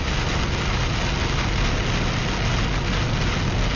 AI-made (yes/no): no